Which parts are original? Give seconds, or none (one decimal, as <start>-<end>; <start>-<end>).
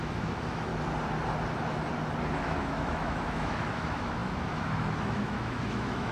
0.7-2.3